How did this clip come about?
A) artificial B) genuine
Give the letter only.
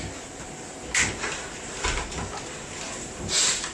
B